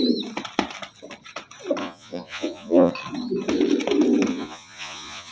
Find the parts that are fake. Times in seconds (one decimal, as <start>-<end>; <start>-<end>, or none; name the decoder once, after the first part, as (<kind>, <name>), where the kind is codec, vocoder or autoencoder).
1.8-2.9 (vocoder, Vocos); 4.3-5.3